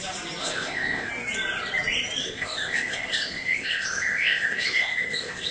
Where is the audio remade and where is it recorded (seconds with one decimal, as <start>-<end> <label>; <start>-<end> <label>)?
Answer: 0.0-0.4 recorded; 0.4-1.1 remade; 1.1-2.2 recorded; 2.2-5.5 remade